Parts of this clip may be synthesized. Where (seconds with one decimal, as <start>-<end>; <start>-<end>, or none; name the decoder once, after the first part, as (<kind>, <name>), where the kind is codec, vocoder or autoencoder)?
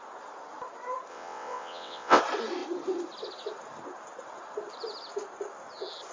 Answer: 1.1-2.2 (vocoder, WaveNeXt)